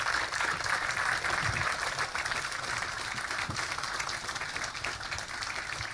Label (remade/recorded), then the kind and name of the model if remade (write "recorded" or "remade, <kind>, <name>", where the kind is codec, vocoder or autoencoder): recorded